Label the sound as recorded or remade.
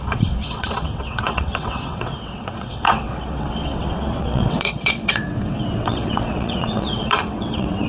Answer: remade